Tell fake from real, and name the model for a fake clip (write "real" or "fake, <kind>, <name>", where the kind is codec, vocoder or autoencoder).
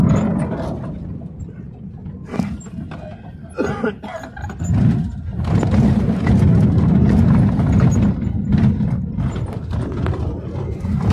real